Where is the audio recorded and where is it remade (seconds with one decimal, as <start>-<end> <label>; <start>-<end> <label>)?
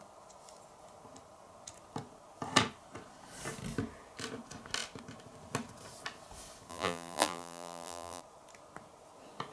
0.0-6.7 recorded; 6.7-8.2 remade; 8.2-9.5 recorded